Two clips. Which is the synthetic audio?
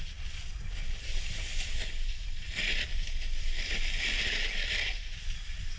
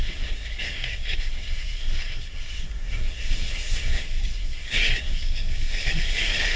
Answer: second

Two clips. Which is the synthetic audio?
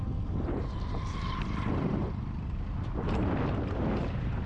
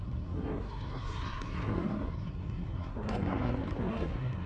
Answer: second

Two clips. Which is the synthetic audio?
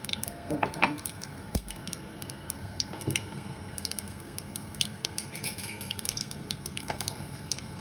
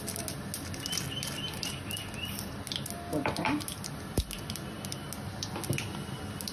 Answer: first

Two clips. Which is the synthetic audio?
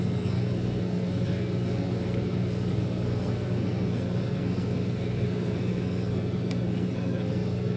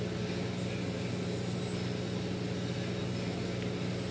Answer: first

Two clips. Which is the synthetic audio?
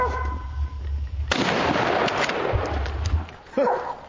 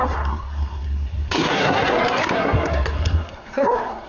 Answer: second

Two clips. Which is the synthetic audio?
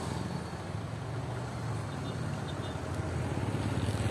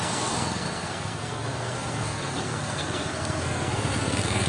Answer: second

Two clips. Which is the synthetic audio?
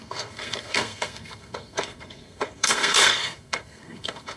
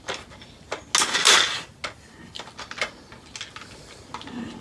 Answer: first